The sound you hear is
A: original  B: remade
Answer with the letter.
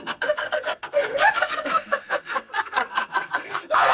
B